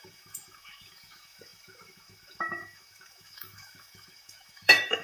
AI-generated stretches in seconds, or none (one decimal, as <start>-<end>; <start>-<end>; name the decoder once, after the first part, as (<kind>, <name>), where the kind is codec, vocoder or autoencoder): 0.0-5.0 (autoencoder, DAC-VAE)

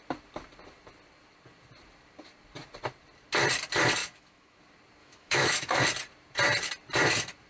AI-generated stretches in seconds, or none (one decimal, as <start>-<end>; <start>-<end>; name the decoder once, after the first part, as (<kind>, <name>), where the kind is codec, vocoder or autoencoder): 4.0-4.6 (autoencoder, DAC-VAE); 5.0-5.8

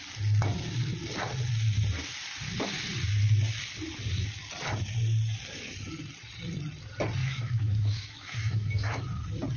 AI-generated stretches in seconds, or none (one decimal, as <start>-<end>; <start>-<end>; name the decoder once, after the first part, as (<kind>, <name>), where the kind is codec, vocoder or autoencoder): 7.2-9.0 (autoencoder, DAC-VAE)

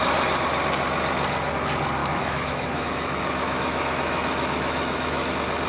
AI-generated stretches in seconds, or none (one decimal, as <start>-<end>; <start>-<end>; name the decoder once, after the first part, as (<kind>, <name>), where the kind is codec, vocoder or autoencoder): 2.0-5.3 (autoencoder, DAC-VAE)

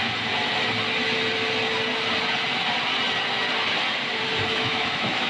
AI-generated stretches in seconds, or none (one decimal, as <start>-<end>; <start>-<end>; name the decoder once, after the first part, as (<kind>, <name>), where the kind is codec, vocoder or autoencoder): 4.5-5.3 (autoencoder, DAC-VAE)

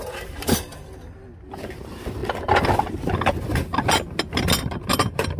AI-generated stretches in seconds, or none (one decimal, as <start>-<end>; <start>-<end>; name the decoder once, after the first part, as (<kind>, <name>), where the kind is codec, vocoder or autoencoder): none

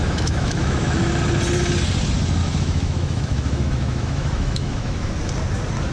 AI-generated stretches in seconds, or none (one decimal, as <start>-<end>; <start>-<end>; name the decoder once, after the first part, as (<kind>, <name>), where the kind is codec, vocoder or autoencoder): 0.0-1.1 (autoencoder, DAC-VAE); 2.4-5.1